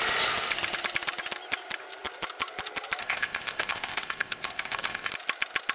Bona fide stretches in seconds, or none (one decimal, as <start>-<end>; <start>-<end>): 0.0-3.0; 5.1-5.7